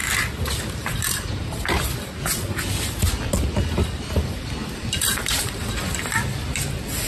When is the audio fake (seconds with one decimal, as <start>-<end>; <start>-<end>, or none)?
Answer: 4.6-5.9